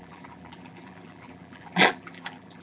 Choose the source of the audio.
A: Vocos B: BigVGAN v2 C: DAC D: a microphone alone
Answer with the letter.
B